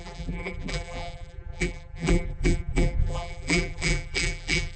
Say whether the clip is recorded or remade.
remade